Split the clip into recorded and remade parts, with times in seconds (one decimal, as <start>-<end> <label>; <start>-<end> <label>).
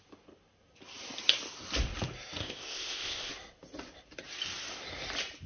0.0-2.4 recorded; 2.4-3.3 remade; 3.3-5.5 recorded